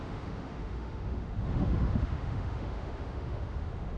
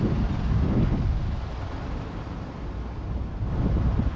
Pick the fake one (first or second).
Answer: first